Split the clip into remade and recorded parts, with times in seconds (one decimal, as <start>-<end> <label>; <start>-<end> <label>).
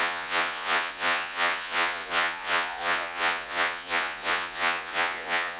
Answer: 0.0-5.6 remade